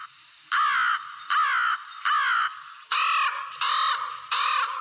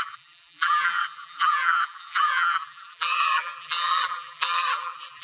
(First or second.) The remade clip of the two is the second